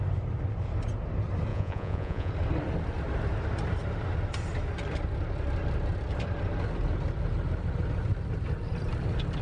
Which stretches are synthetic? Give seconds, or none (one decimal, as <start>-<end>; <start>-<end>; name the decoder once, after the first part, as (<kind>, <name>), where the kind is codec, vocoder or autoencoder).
1.5-2.3 (vocoder, Vocos)